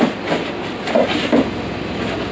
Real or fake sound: real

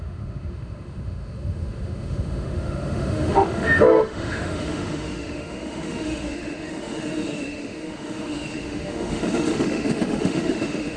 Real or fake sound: fake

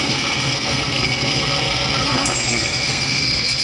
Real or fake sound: fake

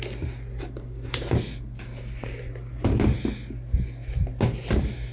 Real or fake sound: real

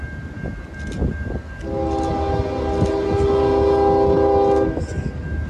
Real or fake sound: real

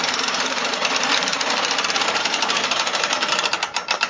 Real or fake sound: fake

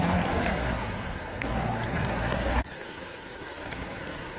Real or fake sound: fake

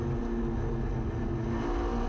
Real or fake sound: real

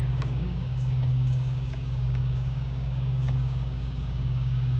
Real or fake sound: fake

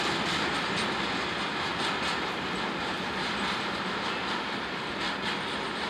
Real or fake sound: real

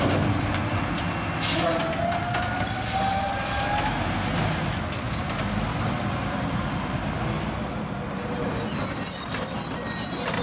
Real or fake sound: real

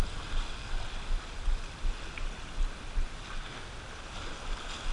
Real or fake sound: real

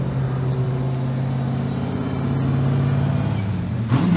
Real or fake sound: real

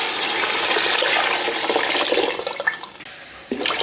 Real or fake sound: real